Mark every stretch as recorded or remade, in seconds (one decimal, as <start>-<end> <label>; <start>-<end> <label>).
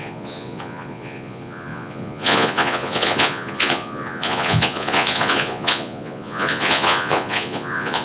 0.0-8.0 remade